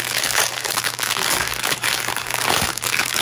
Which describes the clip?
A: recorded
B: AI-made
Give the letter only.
B